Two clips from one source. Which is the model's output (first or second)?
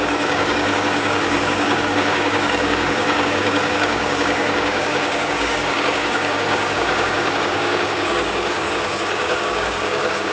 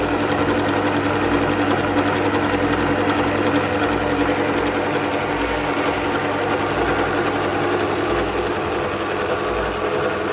first